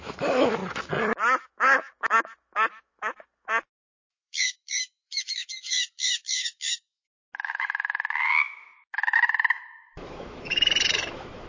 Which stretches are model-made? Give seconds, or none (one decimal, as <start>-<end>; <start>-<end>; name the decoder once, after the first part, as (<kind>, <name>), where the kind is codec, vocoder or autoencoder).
0.0-0.6 (autoencoder, DAC-VAE); 1.4-11.5